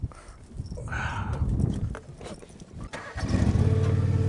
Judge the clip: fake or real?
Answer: real